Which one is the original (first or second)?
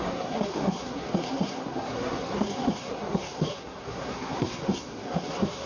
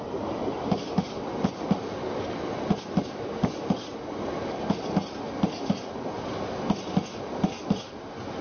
second